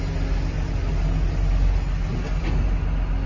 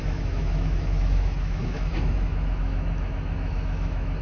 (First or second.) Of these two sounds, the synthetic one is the second